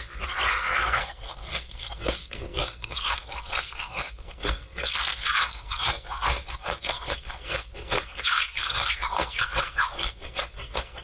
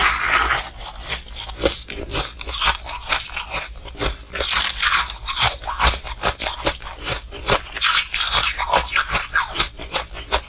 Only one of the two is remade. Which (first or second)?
first